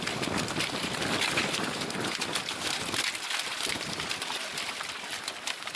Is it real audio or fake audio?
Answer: fake